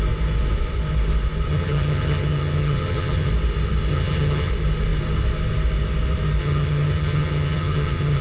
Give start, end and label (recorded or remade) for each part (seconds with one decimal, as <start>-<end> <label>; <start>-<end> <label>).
0.0-1.5 recorded; 1.5-3.3 remade; 3.3-3.9 recorded; 3.9-4.5 remade; 4.5-6.4 recorded; 6.4-8.2 remade